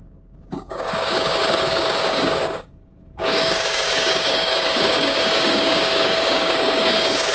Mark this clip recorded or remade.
remade